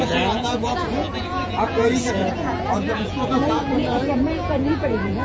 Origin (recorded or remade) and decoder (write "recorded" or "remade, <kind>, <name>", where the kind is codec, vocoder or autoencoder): remade, vocoder, Vocos